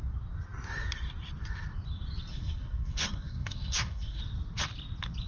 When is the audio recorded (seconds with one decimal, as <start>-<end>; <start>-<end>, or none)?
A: 0.0-2.3; 4.2-5.3